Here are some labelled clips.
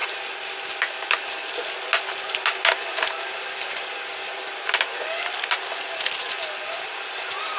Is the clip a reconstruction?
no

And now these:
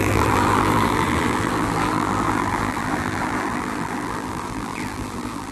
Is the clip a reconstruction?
yes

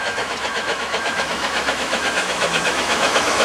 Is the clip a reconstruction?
yes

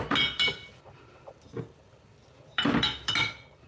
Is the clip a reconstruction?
no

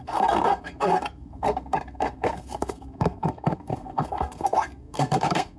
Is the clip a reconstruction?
yes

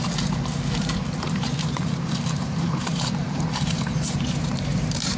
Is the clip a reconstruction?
yes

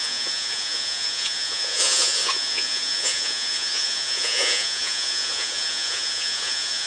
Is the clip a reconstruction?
yes